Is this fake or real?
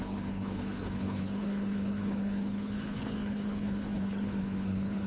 fake